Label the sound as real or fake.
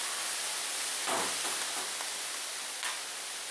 real